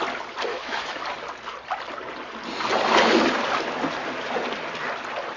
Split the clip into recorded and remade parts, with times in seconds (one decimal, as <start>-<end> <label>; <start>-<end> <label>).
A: 0.0-0.5 recorded; 0.5-1.0 remade; 1.0-5.4 recorded